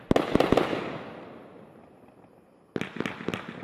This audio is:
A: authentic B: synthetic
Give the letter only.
A